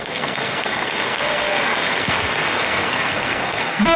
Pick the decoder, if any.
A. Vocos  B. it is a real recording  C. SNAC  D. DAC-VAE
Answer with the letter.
C